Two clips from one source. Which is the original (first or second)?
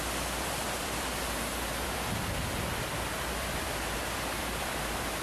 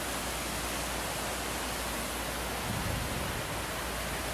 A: second